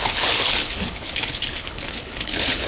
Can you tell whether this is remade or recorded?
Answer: remade